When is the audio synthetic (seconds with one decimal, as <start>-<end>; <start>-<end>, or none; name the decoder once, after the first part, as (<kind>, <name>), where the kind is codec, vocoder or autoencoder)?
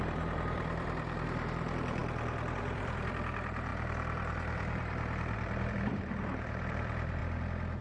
0.0-7.2 (vocoder, BigVGAN v2)